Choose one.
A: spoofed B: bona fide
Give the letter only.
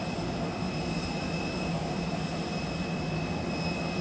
B